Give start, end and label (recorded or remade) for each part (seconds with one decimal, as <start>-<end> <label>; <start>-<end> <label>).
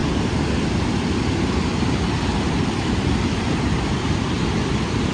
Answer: 0.0-5.1 recorded